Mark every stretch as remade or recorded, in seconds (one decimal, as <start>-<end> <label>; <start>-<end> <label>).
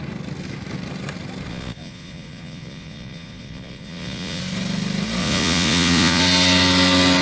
0.0-1.5 recorded; 1.5-4.4 remade; 4.4-5.2 recorded; 5.2-6.2 remade; 6.2-7.2 recorded